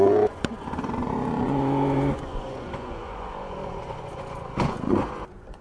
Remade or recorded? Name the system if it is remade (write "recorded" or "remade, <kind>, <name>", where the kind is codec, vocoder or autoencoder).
remade, vocoder, Vocos